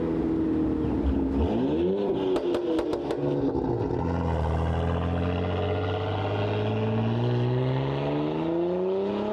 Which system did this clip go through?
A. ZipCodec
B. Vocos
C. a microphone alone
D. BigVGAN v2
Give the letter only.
C